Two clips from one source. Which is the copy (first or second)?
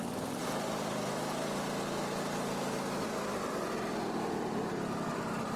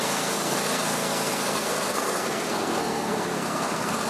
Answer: second